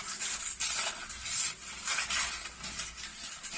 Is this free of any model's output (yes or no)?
yes